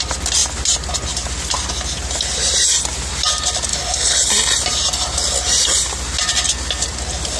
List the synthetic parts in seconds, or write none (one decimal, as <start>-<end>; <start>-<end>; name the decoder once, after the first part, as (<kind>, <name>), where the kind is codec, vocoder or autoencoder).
3.7-4.3 (codec, HILCodec)

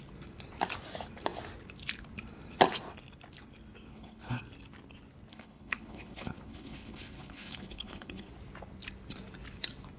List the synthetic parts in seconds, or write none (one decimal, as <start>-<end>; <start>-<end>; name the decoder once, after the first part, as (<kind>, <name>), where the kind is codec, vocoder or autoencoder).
3.9-4.4 (codec, HILCodec); 5.3-8.3

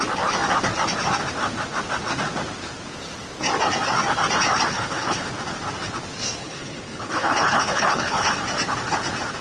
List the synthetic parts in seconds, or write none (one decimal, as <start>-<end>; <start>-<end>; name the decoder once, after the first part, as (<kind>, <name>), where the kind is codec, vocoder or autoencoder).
4.7-5.3 (codec, HILCodec); 6.4-8.3

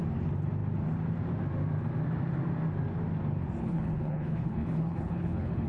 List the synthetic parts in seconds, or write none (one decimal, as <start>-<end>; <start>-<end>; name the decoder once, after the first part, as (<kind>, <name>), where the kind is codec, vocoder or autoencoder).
3.6-5.7 (codec, HILCodec)

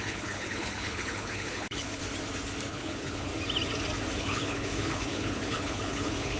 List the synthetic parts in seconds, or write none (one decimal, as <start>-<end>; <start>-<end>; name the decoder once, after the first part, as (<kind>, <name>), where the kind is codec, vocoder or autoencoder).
0.0-2.0 (codec, HILCodec); 2.7-3.3; 4.2-6.4

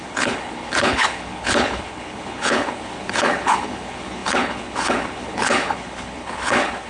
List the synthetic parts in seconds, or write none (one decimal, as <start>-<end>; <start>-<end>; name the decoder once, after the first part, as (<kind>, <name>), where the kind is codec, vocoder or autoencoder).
0.0-6.9 (codec, HILCodec)

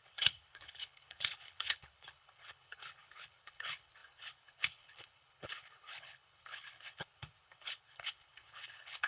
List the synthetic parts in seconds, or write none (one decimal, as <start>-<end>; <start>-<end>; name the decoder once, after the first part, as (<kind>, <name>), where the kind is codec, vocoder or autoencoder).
0.0-9.1 (codec, HILCodec)

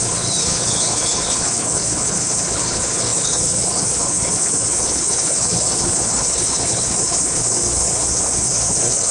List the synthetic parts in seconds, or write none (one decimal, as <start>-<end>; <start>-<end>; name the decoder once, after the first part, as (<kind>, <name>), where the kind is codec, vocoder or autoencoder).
0.0-9.1 (codec, HILCodec)